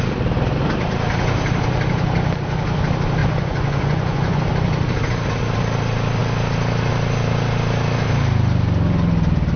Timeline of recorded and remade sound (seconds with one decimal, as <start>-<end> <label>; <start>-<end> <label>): 0.0-3.2 recorded; 3.2-4.4 remade; 4.4-9.6 recorded